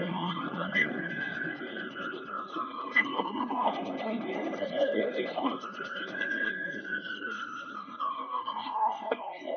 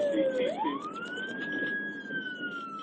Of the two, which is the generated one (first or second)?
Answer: first